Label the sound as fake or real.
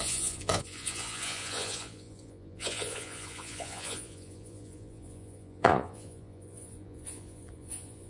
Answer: fake